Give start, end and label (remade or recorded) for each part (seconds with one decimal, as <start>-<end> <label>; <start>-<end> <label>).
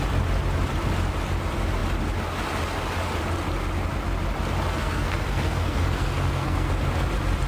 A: 0.0-4.8 recorded; 4.8-6.7 remade; 6.7-7.5 recorded